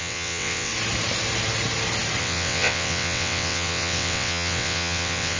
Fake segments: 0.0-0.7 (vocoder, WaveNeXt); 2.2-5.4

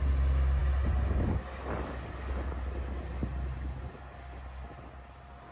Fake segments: none

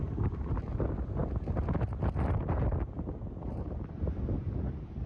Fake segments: none

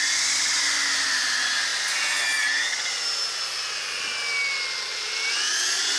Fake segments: none

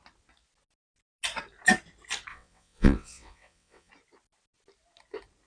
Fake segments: 2.3-3.9 (vocoder, WaveNeXt)

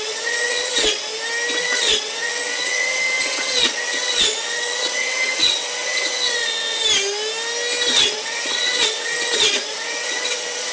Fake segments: 0.0-1.1 (vocoder, WaveNeXt); 1.6-6.8; 7.9-10.7